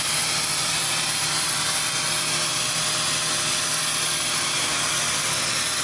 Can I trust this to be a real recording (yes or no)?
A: yes